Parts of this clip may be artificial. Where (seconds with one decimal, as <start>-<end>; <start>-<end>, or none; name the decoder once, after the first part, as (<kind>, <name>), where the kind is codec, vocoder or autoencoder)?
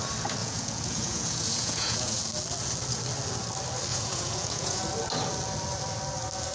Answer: 0.4-2.2 (vocoder, Vocos); 3.9-4.8